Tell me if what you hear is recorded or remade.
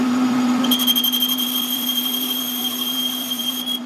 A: remade